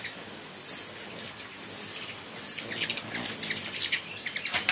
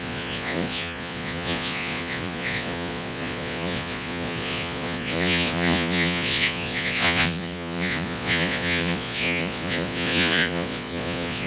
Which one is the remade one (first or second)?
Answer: second